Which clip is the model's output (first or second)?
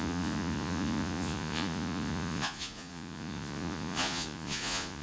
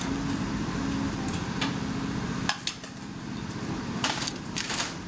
first